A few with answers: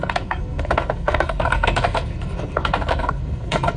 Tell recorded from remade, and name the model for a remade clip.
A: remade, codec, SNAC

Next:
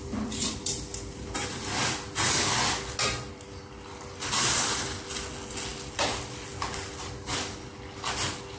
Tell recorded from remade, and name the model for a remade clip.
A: recorded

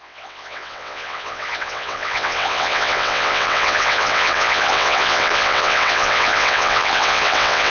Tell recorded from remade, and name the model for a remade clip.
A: remade, vocoder, WaveNeXt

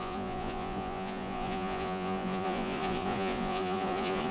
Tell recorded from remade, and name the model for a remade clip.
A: remade, vocoder, Vocos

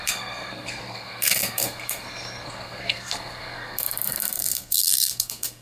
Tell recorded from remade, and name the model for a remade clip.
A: remade, codec, SNAC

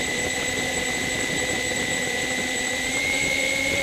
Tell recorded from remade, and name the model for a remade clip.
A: remade, vocoder, BigVGAN v2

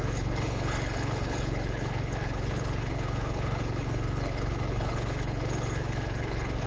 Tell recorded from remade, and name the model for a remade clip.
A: remade, codec, HILCodec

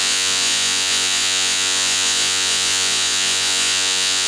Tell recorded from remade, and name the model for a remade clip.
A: remade, vocoder, Vocos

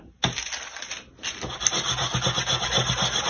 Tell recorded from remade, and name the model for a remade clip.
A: recorded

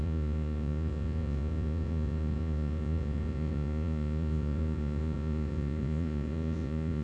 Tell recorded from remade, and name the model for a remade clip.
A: remade, vocoder, Vocos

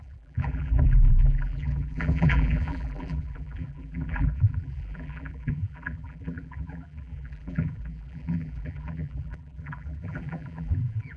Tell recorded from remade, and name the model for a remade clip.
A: remade, vocoder, BigVGAN v2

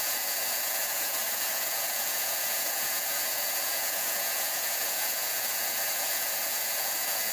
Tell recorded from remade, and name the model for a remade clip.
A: remade, vocoder, Vocos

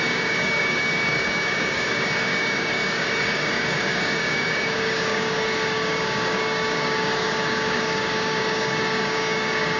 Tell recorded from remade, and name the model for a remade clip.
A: remade, codec, DAC